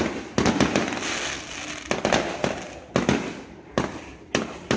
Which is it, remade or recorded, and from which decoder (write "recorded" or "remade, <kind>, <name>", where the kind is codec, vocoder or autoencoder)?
recorded